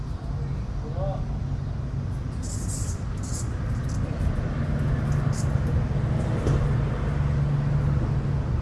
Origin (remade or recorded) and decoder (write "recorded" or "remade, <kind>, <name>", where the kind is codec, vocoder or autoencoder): recorded